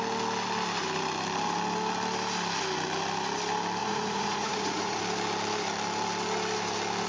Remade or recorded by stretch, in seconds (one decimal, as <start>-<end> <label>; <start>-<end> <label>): 0.0-3.8 recorded; 3.8-5.0 remade; 5.0-7.1 recorded